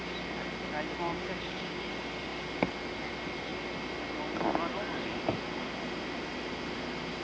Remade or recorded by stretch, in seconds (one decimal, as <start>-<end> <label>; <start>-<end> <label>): 0.0-1.1 recorded; 1.1-1.9 remade; 1.9-7.2 recorded